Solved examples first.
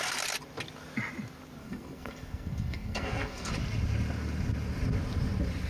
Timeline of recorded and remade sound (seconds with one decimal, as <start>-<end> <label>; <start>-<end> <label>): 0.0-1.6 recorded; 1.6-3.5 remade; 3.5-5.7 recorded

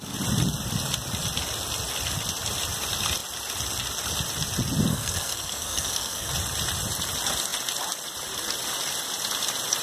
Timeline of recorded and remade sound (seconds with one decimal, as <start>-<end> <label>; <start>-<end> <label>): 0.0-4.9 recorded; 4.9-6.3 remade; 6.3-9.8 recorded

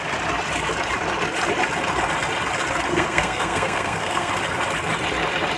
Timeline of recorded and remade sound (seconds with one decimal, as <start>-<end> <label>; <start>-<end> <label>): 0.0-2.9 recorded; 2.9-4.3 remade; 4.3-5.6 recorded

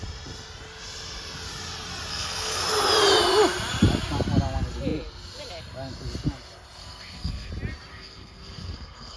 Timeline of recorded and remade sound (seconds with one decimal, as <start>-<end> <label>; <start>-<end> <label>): 0.0-2.1 recorded; 2.1-2.6 remade; 2.6-6.8 recorded; 6.8-7.5 remade; 7.5-7.9 recorded; 7.9-9.2 remade